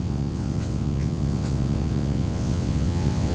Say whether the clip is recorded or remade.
remade